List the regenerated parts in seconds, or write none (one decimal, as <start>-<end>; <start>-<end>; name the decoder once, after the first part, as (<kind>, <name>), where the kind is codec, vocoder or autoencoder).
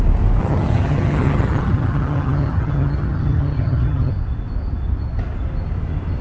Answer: 0.4-4.1 (vocoder, HiFi-GAN)